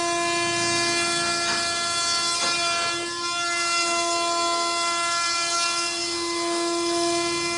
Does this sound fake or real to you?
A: real